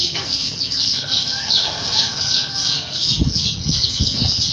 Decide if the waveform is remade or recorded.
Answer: remade